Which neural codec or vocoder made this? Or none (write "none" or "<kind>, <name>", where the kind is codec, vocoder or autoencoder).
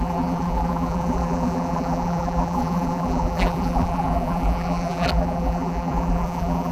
vocoder, BigVGAN v2